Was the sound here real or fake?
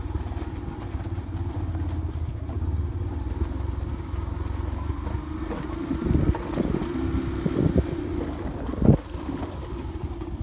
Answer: real